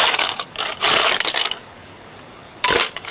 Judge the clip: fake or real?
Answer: fake